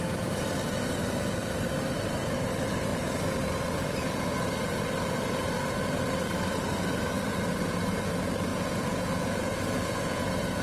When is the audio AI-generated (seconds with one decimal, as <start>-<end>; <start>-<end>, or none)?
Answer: 8.5-10.6